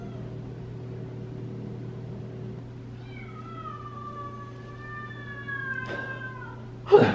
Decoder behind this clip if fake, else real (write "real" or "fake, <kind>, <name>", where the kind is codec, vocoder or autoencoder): real